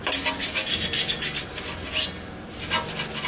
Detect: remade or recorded recorded